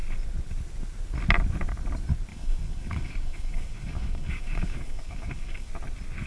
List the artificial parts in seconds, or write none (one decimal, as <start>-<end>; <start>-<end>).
2.3-5.7